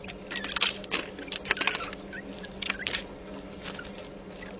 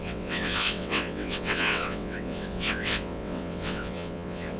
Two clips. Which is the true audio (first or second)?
first